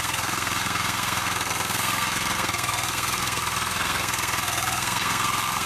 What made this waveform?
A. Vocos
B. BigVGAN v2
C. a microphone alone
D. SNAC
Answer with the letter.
D